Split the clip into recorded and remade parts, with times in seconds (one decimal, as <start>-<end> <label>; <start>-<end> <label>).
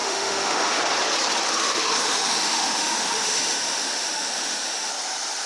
0.0-0.8 remade; 0.8-1.6 recorded; 1.6-4.9 remade; 4.9-5.5 recorded